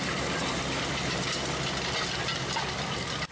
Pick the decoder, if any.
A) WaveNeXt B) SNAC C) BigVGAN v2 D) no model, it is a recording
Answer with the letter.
D